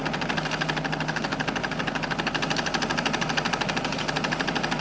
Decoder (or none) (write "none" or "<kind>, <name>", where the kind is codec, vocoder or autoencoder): none